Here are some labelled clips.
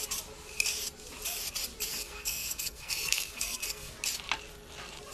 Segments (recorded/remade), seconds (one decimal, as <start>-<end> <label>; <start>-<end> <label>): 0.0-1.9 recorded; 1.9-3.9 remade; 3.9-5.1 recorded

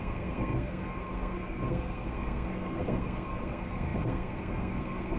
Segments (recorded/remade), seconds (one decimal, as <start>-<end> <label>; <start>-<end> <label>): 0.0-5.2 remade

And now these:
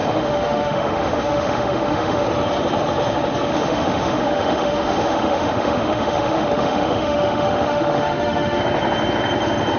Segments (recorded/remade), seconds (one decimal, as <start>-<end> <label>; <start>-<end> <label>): 0.0-2.2 remade; 2.2-3.5 recorded; 3.5-8.6 remade; 8.6-9.8 recorded